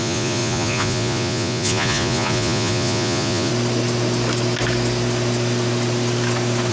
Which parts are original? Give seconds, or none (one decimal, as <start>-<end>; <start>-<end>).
3.5-6.7